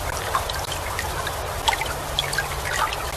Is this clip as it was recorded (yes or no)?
yes